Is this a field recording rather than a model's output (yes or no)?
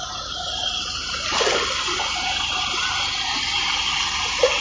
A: yes